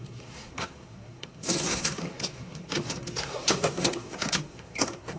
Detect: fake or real fake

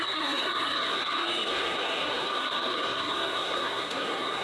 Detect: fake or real fake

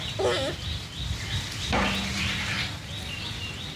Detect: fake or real real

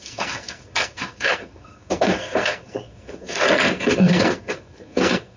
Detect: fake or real fake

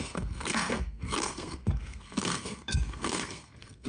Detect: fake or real fake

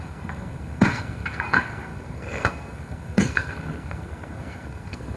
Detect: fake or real fake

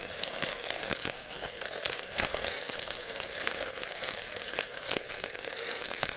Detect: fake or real fake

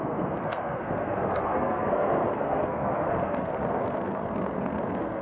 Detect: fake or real fake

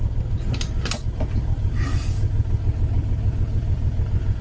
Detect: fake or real real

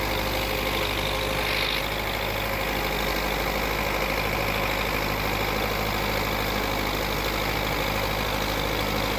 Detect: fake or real real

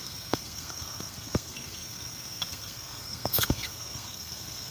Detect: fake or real fake